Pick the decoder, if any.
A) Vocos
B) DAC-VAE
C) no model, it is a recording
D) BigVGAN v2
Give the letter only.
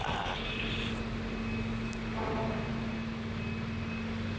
C